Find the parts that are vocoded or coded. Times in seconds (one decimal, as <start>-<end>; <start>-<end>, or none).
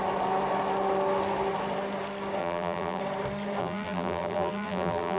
2.4-3.0; 3.6-5.2